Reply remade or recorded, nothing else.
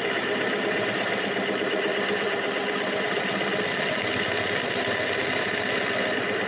recorded